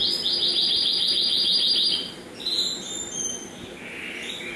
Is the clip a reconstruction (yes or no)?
no